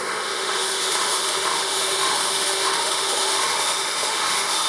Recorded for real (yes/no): no